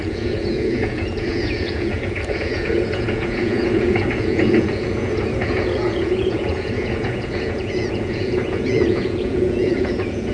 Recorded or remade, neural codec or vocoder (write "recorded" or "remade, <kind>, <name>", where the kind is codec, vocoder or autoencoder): remade, vocoder, Vocos